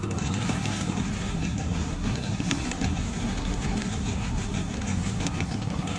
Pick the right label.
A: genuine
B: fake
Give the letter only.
B